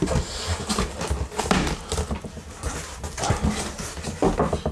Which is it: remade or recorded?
recorded